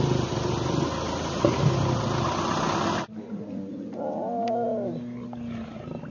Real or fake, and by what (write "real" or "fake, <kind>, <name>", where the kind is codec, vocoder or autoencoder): real